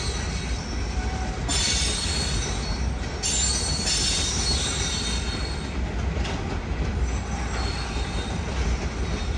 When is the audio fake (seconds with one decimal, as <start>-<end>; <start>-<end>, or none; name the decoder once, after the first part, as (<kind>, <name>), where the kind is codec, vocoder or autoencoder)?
none